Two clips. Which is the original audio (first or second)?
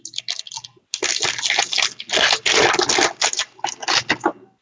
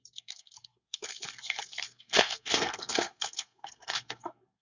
first